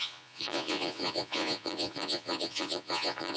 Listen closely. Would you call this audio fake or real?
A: fake